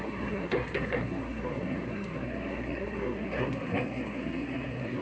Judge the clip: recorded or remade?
remade